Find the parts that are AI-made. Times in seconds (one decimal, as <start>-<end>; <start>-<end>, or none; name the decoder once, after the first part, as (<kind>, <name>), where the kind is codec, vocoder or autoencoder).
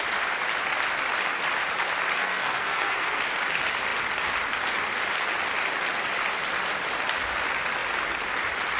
2.2-3.2 (codec, SNAC)